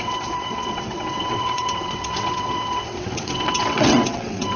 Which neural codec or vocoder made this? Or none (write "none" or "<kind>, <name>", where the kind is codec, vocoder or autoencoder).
vocoder, WaveNeXt